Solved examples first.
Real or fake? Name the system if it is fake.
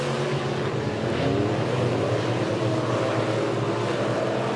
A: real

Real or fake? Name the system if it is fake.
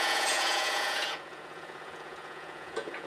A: fake, vocoder, Vocos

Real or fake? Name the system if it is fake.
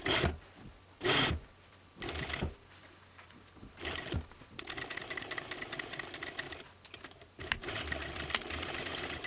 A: real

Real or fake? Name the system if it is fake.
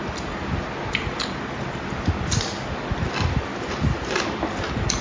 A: real